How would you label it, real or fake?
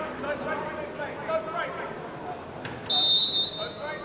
real